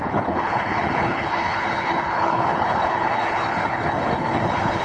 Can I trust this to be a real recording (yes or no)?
no